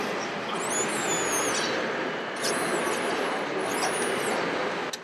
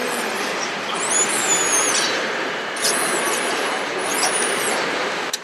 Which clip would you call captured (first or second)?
first